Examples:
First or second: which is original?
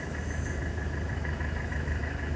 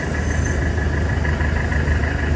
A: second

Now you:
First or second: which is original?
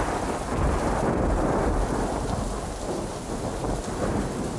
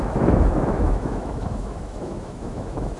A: first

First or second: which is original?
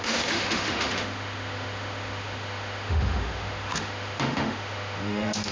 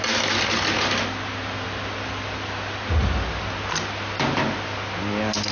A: second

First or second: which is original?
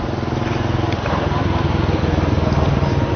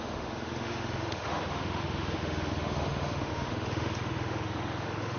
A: first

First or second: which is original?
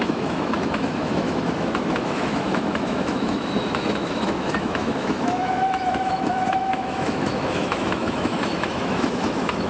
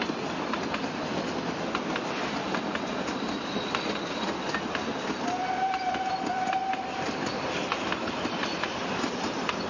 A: second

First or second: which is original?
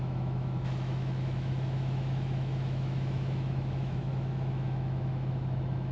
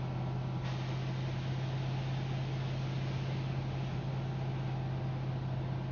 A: second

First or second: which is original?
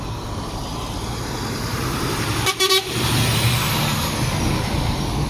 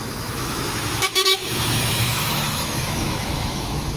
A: first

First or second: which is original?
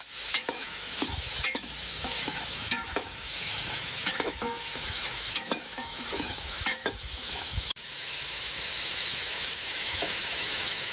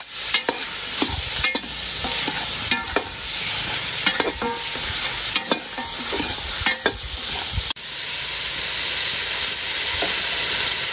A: second